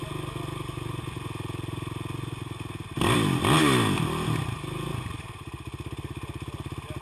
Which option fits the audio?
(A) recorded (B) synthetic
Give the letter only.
A